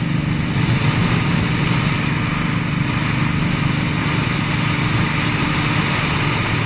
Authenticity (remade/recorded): recorded